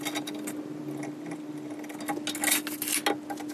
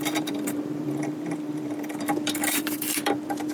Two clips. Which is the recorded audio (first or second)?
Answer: first